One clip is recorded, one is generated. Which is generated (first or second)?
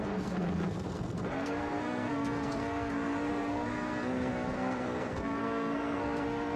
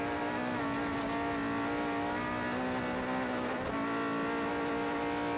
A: first